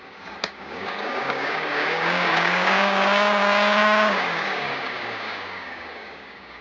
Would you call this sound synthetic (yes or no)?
yes